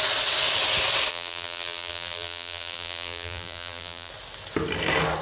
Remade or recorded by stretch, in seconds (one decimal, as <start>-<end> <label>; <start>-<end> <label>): 0.0-1.1 recorded; 1.1-4.1 remade; 4.1-5.2 recorded